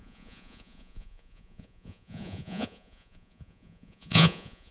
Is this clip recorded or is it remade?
remade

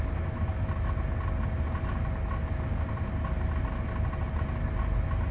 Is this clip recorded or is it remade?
recorded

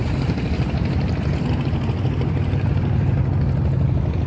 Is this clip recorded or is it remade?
recorded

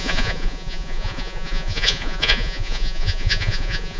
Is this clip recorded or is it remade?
remade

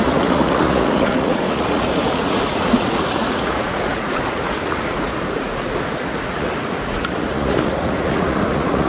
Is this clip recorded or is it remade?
remade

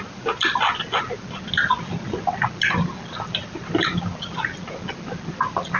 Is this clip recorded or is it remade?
recorded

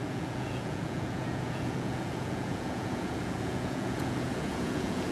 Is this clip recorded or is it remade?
remade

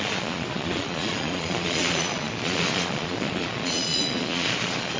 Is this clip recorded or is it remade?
remade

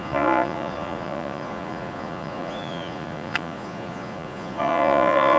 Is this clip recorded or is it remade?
remade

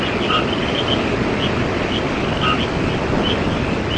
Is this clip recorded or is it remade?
recorded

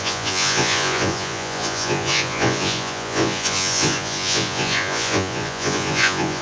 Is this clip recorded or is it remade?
remade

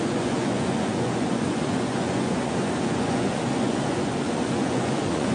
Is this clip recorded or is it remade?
remade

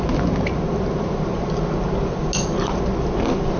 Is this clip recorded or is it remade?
recorded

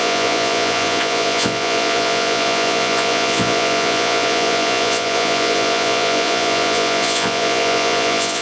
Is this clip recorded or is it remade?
remade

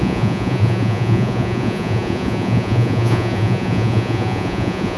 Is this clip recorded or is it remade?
remade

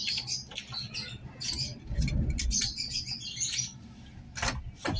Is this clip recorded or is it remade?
recorded